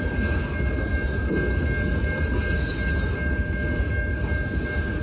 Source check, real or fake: real